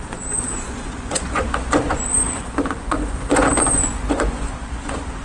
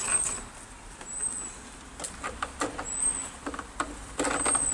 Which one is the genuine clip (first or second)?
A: second